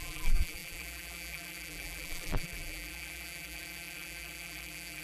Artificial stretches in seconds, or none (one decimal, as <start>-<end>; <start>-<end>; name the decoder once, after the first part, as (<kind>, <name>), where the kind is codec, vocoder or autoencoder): 0.0-5.0 (vocoder, BigVGAN v2)